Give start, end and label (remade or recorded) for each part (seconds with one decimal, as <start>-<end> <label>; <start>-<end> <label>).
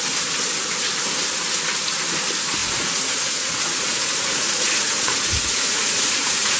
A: 0.0-2.6 recorded; 2.6-6.6 remade